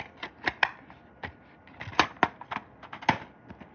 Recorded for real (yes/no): yes